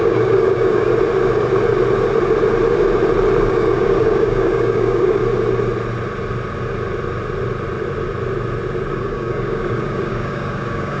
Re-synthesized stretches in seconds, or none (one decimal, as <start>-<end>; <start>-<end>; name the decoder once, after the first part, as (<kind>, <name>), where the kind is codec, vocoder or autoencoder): 0.0-0.9 (codec, DAC); 3.5-5.2; 8.9-11.0